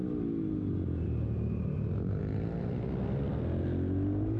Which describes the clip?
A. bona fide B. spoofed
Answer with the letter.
A